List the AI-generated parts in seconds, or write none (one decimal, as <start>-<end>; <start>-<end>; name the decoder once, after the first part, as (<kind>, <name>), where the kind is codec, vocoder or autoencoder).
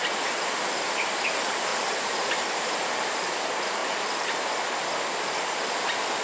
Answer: 1.7-3.4 (vocoder, BigVGAN v2); 3.8-4.4